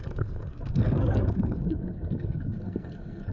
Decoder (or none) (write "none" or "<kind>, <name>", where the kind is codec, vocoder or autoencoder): codec, SNAC